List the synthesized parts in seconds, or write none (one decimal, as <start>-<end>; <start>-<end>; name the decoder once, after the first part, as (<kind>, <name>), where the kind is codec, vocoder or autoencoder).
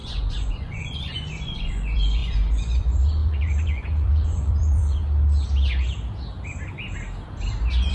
0.0-5.0 (vocoder, Vocos)